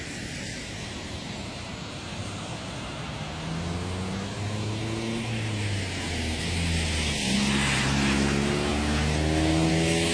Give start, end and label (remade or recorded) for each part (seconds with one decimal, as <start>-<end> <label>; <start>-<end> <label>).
0.0-10.1 recorded